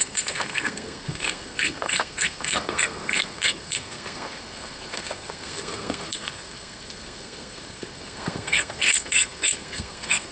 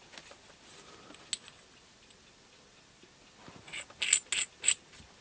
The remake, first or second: first